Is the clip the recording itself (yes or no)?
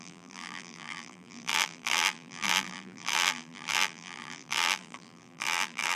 no